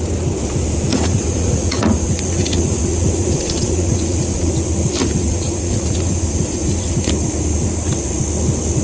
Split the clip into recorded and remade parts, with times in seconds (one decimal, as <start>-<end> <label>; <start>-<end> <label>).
0.0-0.9 recorded; 0.9-4.5 remade; 4.5-5.0 recorded; 5.0-7.1 remade; 7.1-8.8 recorded

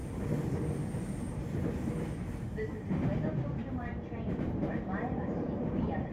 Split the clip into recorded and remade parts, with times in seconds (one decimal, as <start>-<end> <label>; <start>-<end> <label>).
0.0-3.6 recorded; 3.6-6.1 remade

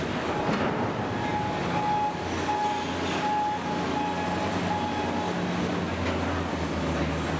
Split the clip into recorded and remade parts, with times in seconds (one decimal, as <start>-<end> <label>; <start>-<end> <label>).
0.0-7.4 recorded